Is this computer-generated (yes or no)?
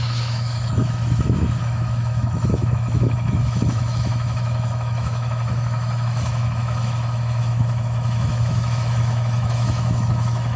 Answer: yes